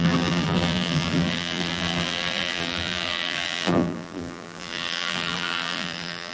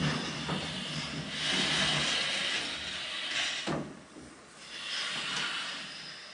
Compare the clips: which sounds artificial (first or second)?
first